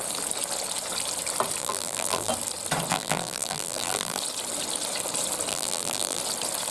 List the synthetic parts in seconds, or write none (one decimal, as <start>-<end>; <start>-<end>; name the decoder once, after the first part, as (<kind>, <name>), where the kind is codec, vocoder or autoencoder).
1.6-2.3 (vocoder, BigVGAN v2); 2.9-4.2; 5.5-6.2